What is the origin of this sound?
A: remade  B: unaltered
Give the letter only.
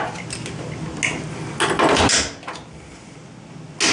B